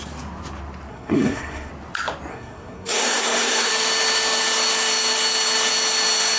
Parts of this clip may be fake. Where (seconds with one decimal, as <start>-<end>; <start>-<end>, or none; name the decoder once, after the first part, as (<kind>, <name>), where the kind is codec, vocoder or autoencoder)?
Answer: 0.9-1.7 (codec, SNAC); 2.3-3.7